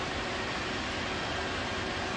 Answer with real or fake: real